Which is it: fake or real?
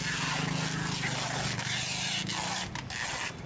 real